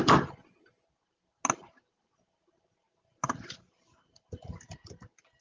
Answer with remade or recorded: recorded